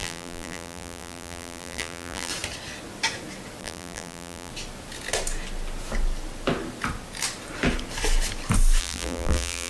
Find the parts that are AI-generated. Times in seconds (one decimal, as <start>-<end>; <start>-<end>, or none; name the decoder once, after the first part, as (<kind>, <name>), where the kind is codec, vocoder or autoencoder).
0.0-2.3 (vocoder, BigVGAN v2); 3.6-4.5; 8.8-9.7